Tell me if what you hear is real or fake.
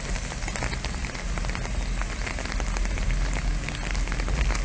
real